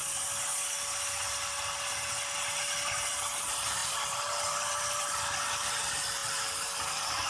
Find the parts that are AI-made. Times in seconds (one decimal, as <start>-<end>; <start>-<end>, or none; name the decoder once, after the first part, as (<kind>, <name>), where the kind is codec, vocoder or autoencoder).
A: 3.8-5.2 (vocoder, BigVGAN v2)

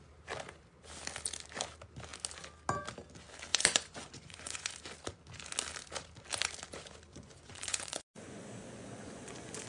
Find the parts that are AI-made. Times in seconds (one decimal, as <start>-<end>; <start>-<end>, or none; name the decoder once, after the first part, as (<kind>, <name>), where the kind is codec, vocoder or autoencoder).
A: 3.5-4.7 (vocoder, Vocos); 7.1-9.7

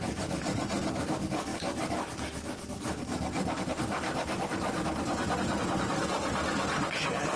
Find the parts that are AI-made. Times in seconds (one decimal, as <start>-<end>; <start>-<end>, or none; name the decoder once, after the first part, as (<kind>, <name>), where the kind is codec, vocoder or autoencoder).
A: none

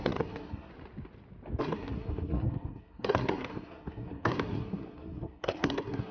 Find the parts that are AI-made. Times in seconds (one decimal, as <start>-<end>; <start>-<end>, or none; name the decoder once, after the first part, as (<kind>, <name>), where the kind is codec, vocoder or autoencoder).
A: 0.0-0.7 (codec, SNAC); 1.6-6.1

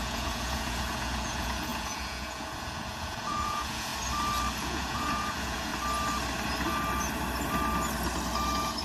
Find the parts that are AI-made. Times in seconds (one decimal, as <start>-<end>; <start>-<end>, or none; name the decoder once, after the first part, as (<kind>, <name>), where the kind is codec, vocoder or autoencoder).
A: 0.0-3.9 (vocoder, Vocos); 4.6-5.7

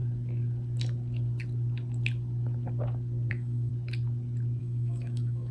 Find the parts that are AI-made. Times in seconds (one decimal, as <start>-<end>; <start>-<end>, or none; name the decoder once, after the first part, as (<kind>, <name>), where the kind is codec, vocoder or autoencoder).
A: 3.3-3.7 (autoencoder, DAC-VAE); 4.6-5.5

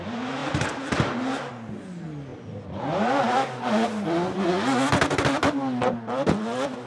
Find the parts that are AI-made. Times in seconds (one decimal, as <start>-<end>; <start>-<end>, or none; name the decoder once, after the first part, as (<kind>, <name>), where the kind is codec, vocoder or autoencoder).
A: none

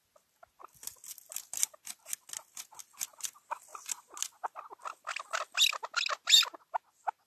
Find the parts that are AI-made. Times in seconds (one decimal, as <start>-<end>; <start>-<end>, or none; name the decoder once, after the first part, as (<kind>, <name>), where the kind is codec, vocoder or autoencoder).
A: none